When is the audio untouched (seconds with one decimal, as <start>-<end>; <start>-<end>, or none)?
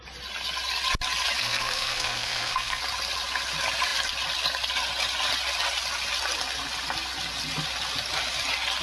0.0-1.4; 2.8-8.8